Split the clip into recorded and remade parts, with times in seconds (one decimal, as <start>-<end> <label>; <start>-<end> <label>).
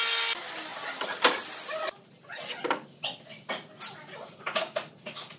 0.0-5.4 recorded